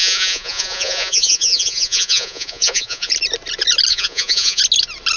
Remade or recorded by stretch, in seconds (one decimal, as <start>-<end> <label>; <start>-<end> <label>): 0.0-3.1 remade; 3.1-3.9 recorded; 3.9-4.6 remade; 4.6-5.2 recorded